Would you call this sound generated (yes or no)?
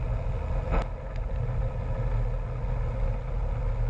no